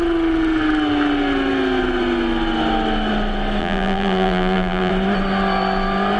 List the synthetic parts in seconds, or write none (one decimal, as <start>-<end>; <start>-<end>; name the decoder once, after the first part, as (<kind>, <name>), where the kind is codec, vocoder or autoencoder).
3.6-4.9 (vocoder, BigVGAN v2)